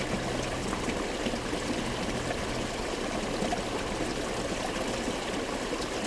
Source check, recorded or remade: recorded